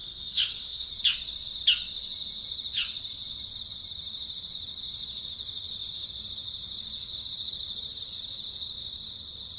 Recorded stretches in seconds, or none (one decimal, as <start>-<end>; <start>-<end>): 0.9-9.6